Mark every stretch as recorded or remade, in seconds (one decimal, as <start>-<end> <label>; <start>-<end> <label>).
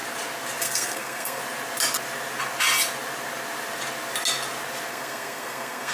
0.0-0.6 recorded; 0.6-1.4 remade; 1.4-4.9 recorded; 4.9-5.9 remade